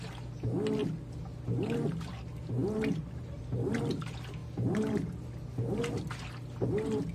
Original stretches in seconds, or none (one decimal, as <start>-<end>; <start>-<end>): 0.0-7.1